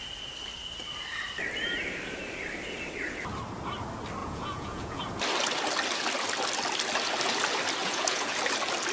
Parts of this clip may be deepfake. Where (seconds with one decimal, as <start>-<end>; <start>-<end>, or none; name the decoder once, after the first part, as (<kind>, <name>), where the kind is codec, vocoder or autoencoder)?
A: 4.2-5.0 (vocoder, Vocos); 7.8-8.4